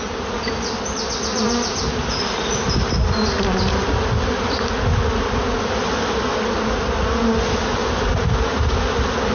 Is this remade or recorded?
recorded